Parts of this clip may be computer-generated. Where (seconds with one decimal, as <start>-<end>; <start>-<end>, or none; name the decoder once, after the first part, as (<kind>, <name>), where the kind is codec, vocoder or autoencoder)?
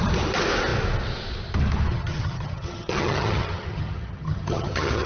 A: 1.9-5.1 (vocoder, HiFi-GAN)